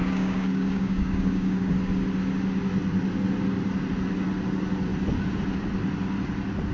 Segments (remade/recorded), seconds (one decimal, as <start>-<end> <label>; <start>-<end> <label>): 0.0-1.7 remade; 1.7-6.7 recorded